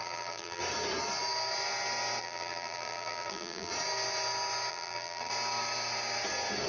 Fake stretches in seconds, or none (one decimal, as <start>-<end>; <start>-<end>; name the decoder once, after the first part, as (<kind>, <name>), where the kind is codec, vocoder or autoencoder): 0.0-0.6 (vocoder, BigVGAN v2); 2.2-3.7; 4.7-5.3